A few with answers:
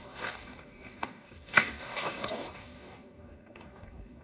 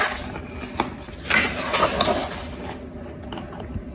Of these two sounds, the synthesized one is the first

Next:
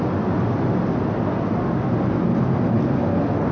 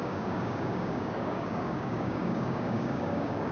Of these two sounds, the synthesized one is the second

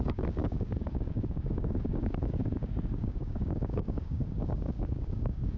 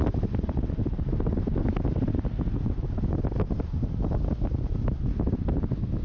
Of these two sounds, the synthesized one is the first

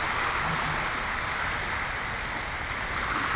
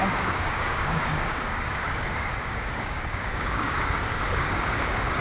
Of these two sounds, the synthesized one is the second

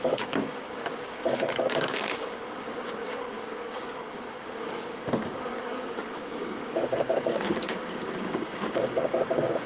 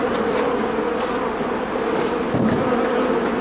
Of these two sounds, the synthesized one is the first